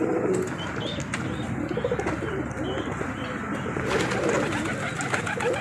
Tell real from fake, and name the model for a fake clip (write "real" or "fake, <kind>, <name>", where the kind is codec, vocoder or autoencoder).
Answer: real